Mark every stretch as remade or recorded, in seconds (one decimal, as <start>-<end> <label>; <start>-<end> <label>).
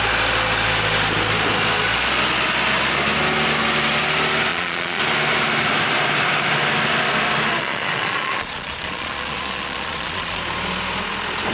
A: 0.0-4.5 recorded; 4.5-5.0 remade; 5.0-7.6 recorded; 7.6-10.4 remade; 10.4-11.5 recorded